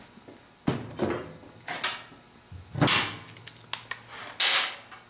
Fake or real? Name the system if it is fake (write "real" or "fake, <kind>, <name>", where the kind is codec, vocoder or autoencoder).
real